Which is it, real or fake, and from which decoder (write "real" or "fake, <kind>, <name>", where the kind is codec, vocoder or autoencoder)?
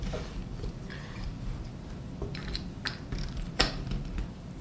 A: fake, vocoder, BigVGAN v2